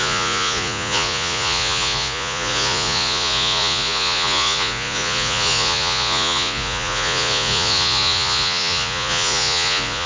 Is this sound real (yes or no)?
no